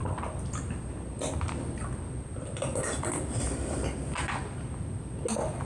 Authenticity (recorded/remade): recorded